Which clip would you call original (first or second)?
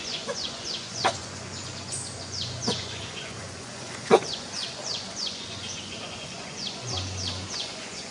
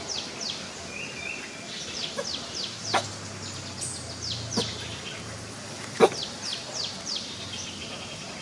second